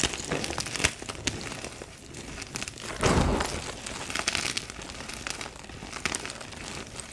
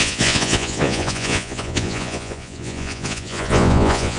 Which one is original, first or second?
first